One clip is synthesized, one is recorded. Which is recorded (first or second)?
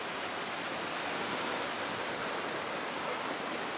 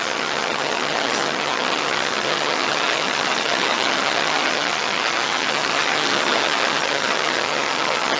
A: first